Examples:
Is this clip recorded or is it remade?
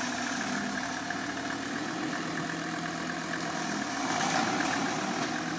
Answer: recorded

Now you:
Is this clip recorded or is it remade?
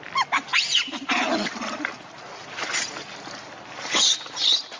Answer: recorded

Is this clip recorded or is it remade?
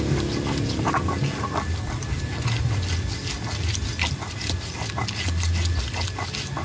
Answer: recorded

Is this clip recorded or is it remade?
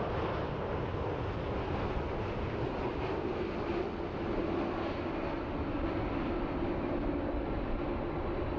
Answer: recorded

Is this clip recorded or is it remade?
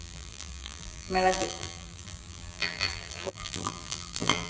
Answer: remade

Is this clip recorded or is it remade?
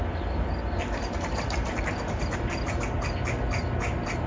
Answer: recorded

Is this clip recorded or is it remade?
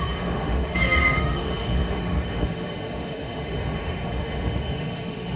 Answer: remade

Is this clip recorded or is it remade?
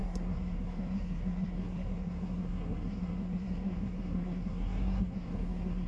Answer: remade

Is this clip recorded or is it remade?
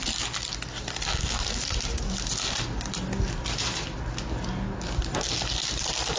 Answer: recorded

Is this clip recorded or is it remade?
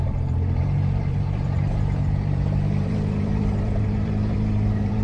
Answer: remade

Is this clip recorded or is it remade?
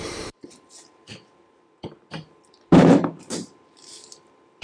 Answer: remade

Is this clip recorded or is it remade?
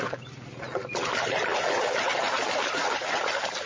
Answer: recorded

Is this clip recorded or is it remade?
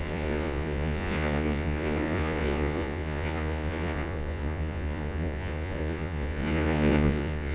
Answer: remade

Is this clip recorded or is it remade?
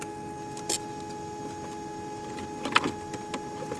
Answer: recorded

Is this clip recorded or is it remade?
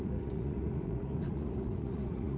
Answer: remade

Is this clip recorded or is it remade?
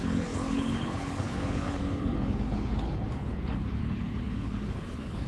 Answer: remade